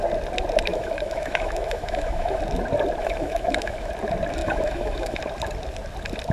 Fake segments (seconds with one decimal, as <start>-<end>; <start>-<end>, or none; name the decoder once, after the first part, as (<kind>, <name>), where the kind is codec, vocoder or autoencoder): 0.7-2.4 (autoencoder, DAC-VAE); 3.0-3.9; 4.4-5.2